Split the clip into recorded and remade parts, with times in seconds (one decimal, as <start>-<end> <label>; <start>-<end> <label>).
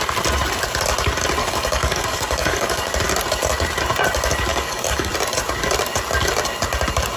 0.0-1.4 recorded; 1.4-2.9 remade; 2.9-4.5 recorded; 4.5-5.1 remade; 5.1-7.2 recorded